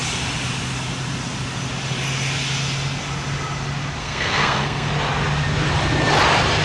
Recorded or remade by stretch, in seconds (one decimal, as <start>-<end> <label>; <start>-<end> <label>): 0.0-4.0 recorded; 4.0-4.9 remade; 4.9-6.6 recorded